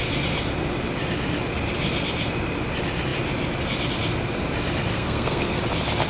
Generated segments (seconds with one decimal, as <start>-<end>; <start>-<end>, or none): 4.9-5.6

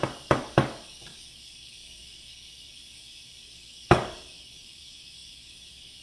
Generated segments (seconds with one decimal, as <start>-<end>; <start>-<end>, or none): 0.0-6.0

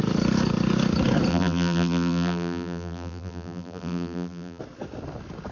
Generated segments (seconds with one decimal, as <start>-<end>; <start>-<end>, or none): 1.3-4.6

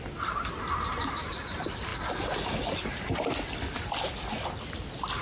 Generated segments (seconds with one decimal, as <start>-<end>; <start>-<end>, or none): none

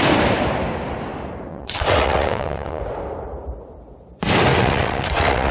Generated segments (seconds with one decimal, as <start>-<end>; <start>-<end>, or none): 1.5-2.8; 4.5-5.5